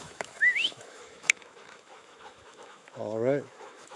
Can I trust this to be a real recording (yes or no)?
no